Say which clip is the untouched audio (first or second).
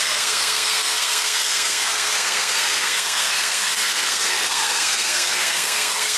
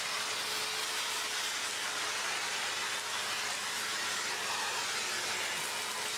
second